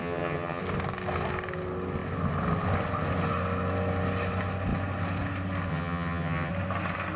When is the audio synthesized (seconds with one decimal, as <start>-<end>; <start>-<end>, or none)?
0.0-0.6; 5.7-6.5